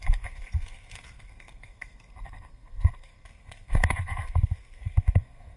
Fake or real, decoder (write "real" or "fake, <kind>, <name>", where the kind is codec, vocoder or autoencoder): fake, codec, SNAC